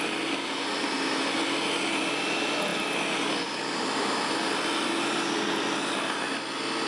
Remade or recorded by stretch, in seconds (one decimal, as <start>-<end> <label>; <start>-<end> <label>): 0.0-6.9 recorded